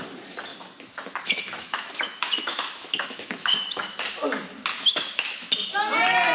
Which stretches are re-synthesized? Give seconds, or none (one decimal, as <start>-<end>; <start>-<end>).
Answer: 0.5-4.0; 4.7-5.5